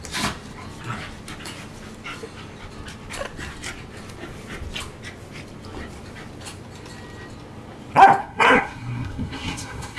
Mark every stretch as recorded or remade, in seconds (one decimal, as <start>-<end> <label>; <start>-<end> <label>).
0.0-8.2 recorded; 8.2-10.0 remade

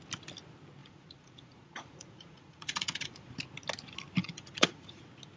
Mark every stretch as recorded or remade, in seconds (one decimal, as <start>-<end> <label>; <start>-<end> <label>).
0.0-0.8 recorded; 0.8-3.3 remade; 3.3-4.2 recorded; 4.2-5.0 remade; 5.0-5.4 recorded

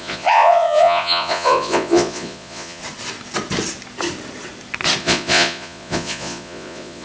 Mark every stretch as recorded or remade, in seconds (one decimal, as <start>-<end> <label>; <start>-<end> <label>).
0.0-2.8 remade; 2.8-5.0 recorded; 5.0-7.0 remade

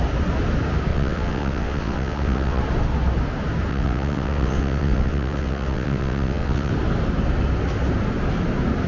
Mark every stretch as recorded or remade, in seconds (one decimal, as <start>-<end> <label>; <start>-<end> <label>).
0.0-0.9 recorded; 0.9-2.6 remade; 2.6-3.7 recorded; 3.7-6.7 remade; 6.7-8.9 recorded

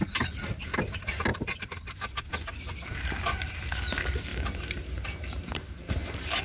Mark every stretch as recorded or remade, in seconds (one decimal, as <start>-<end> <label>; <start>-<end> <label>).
0.0-1.3 recorded; 1.3-2.3 remade; 2.3-4.3 recorded; 4.3-6.4 remade

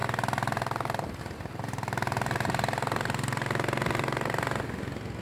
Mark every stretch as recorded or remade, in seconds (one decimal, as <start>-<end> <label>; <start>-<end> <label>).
0.0-5.2 recorded

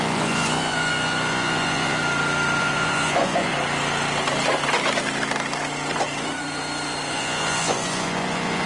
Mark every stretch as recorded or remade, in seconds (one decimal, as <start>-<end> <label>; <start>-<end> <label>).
0.0-2.0 remade; 2.0-2.6 recorded; 2.6-3.5 remade; 3.5-7.1 recorded; 7.1-8.7 remade

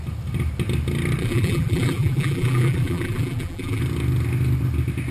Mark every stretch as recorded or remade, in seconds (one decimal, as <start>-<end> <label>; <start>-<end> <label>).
0.0-1.2 recorded; 1.2-3.8 remade; 3.8-5.1 recorded